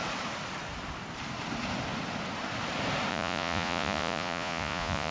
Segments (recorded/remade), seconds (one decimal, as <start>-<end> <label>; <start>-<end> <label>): 0.0-3.1 recorded; 3.1-5.1 remade